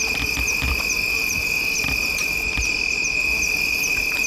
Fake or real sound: real